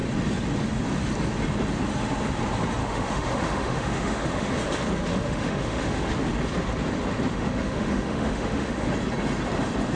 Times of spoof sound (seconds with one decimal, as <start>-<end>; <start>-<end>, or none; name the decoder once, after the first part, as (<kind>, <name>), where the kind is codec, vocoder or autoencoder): 2.8-4.5 (autoencoder, DAC-VAE); 5.1-6.1; 7.3-8.9